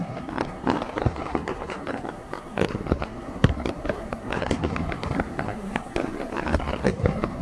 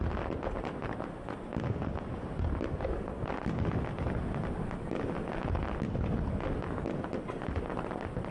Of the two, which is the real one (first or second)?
second